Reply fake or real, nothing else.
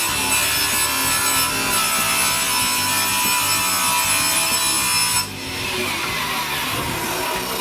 real